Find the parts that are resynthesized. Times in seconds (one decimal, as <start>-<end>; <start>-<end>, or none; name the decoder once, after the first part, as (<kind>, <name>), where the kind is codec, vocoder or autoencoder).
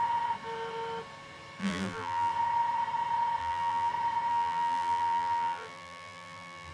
1.6-2.3 (vocoder, BigVGAN v2); 3.4-3.9; 4.3-6.7